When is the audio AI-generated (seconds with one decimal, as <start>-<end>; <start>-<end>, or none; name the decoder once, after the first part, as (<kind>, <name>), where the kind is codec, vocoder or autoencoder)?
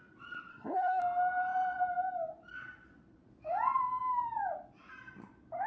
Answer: 0.5-1.0 (codec, SNAC)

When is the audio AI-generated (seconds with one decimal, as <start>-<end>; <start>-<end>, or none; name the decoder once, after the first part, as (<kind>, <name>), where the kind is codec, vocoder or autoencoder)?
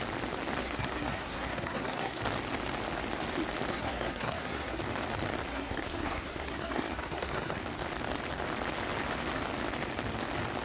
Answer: 0.6-2.2 (codec, SNAC); 3.7-4.8; 5.5-7.6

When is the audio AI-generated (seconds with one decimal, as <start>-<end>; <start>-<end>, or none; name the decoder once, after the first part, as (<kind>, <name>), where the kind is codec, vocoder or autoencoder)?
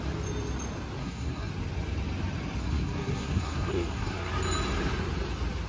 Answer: 1.0-1.5 (codec, SNAC); 2.6-4.3